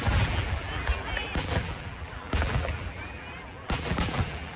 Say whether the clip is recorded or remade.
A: remade